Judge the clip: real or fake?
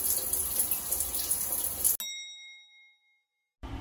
real